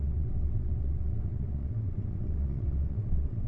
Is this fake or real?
fake